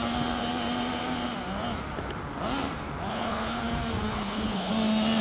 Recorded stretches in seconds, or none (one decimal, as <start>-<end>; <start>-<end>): 0.0-3.1; 3.6-4.1; 4.7-5.2